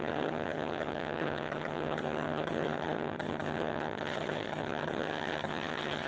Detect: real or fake fake